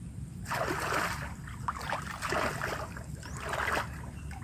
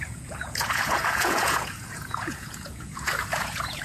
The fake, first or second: second